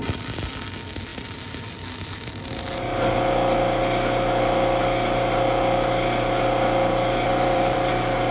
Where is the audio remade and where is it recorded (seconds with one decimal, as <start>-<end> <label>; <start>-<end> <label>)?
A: 0.0-7.3 recorded; 7.3-7.9 remade; 7.9-8.3 recorded